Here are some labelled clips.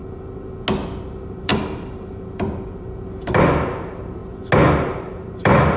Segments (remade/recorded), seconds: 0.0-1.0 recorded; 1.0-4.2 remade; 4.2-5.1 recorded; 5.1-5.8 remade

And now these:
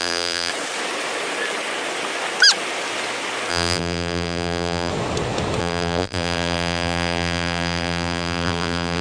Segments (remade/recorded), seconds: 0.0-0.5 remade; 0.5-3.5 recorded; 3.5-4.9 remade; 4.9-5.6 recorded; 5.6-9.0 remade